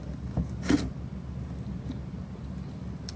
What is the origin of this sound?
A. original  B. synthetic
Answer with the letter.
A